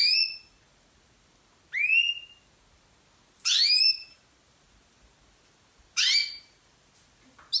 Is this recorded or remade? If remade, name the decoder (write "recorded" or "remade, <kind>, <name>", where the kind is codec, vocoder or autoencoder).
recorded